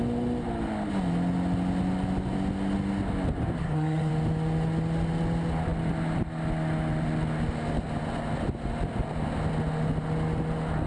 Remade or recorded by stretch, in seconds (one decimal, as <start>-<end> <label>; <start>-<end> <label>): 0.0-3.6 recorded; 3.6-4.1 remade; 4.1-10.9 recorded